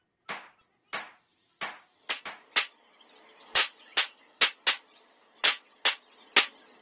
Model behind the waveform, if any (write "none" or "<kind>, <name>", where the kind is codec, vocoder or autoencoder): none